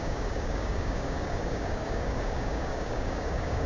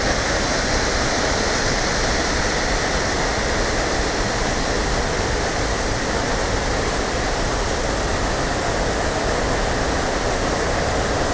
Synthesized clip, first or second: first